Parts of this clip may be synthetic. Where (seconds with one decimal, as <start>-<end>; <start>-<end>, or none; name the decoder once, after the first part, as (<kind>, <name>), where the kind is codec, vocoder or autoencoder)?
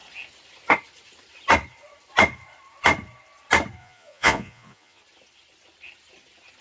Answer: 3.8-5.0 (vocoder, Vocos)